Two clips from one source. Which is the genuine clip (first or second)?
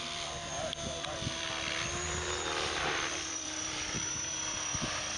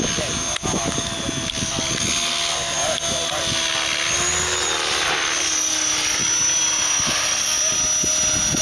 second